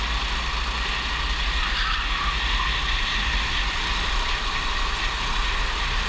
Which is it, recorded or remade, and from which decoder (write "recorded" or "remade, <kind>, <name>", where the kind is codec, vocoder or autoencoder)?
recorded